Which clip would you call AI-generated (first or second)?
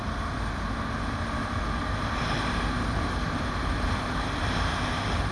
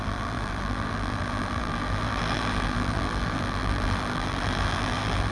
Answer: second